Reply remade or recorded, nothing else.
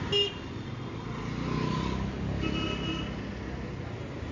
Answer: recorded